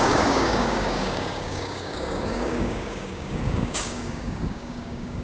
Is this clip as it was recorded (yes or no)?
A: no